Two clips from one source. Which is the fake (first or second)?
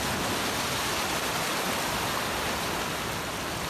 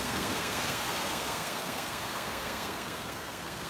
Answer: second